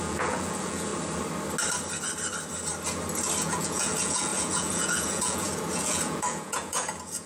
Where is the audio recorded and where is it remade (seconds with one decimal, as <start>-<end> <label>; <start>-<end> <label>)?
0.0-0.9 remade; 0.9-3.4 recorded; 3.4-7.3 remade